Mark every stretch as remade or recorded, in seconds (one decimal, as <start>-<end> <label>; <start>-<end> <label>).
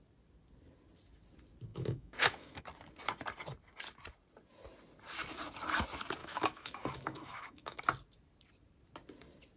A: 0.0-1.7 recorded; 1.7-2.6 remade; 2.6-6.2 recorded; 6.2-7.8 remade; 7.8-9.6 recorded